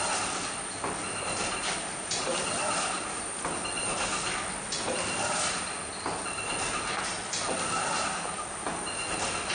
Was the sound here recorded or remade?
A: recorded